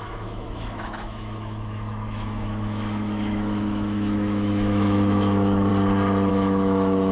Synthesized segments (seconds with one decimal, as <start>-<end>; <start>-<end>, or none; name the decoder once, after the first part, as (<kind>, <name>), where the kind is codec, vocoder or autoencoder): 0.0-5.7 (autoencoder, DAC-VAE); 6.3-7.1